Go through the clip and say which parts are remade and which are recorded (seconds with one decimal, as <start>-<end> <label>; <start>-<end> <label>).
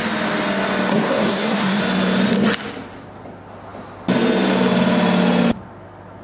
0.0-0.9 recorded; 0.9-1.8 remade; 1.8-6.2 recorded